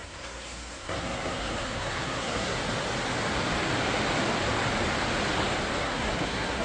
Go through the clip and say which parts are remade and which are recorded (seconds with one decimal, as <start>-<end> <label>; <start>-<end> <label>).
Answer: 0.0-2.6 remade; 2.6-5.8 recorded; 5.8-6.6 remade